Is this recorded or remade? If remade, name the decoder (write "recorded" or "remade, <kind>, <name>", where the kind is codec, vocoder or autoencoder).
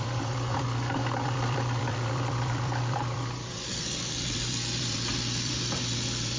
remade, vocoder, BigVGAN v2